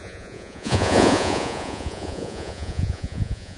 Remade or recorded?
remade